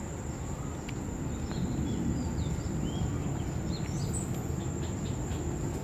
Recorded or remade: recorded